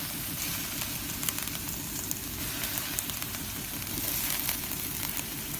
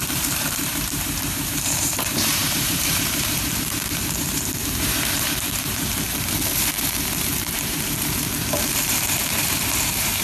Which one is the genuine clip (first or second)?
first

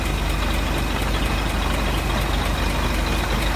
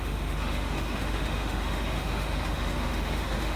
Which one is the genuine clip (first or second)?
first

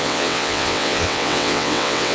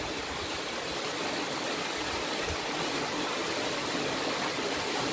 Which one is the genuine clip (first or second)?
second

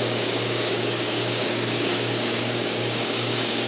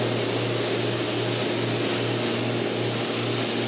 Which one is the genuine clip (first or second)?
second